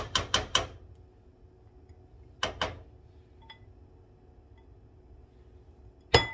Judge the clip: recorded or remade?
recorded